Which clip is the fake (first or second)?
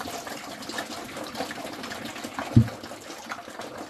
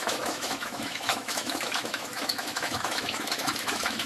second